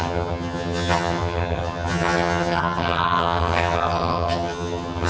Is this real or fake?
fake